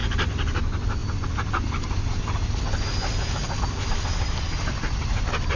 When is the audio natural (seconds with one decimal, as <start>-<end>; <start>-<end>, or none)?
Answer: 0.0-5.6